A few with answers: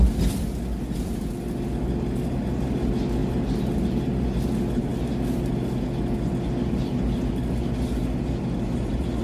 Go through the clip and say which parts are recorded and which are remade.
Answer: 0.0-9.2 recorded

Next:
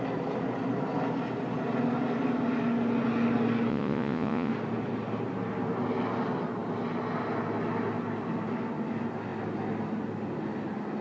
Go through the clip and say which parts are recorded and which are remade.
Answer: 0.0-3.7 recorded; 3.7-4.5 remade; 4.5-11.0 recorded

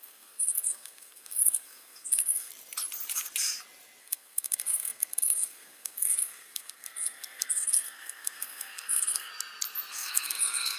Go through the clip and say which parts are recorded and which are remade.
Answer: 0.0-2.5 remade; 2.5-4.0 recorded; 4.0-9.3 remade; 9.3-9.9 recorded; 9.9-10.8 remade

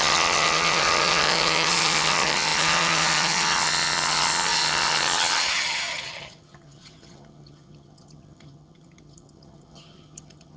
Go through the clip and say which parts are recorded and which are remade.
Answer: 0.0-10.6 remade

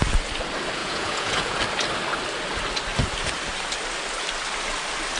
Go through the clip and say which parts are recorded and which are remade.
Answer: 0.0-0.8 recorded; 0.8-1.6 remade; 1.6-5.2 recorded

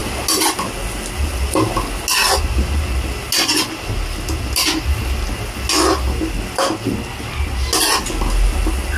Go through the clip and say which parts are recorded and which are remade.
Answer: 0.0-9.0 recorded

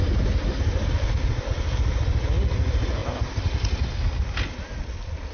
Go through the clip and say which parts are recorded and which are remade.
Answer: 0.0-5.3 recorded

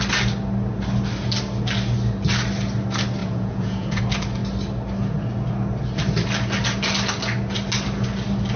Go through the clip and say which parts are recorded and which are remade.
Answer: 0.0-3.2 recorded; 3.2-4.0 remade; 4.0-8.6 recorded